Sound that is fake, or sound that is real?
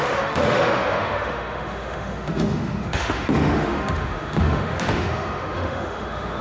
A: fake